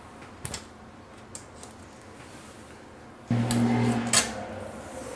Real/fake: real